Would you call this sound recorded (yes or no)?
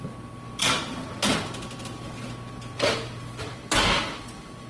yes